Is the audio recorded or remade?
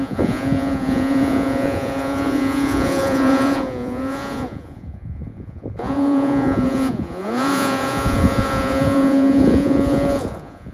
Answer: remade